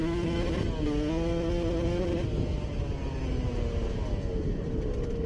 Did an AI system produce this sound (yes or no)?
no